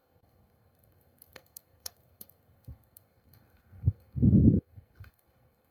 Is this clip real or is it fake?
fake